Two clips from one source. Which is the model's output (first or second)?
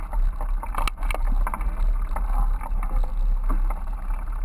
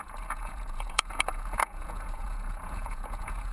second